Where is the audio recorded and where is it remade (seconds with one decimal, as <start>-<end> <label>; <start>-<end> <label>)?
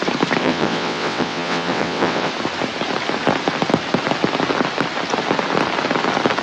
0.0-0.4 recorded; 0.4-2.3 remade; 2.3-6.4 recorded